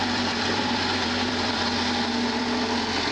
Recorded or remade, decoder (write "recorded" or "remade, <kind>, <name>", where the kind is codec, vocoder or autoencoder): remade, vocoder, BigVGAN v2